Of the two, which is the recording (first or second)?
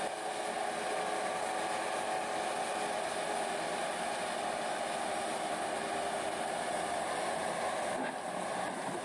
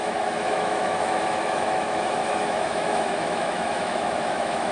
first